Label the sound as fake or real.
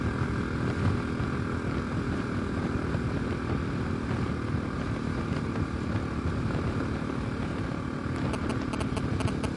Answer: real